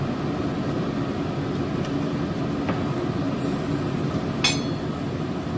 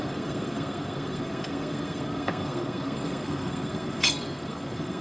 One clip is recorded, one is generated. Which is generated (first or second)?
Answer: second